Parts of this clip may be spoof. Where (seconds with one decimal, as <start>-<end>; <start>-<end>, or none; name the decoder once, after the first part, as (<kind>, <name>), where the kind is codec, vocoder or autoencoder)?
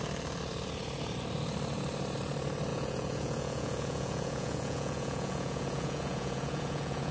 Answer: 2.7-7.1 (vocoder, Vocos)